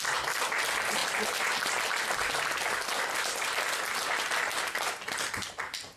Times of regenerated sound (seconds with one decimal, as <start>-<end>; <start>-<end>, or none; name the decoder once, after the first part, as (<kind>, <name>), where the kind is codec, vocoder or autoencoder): none